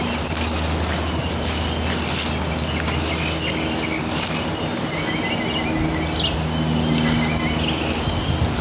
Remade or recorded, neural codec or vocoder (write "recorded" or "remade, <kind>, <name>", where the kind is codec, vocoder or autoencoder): recorded